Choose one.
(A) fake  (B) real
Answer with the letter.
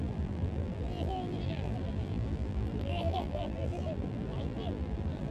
A